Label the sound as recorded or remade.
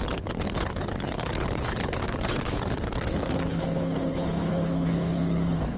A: remade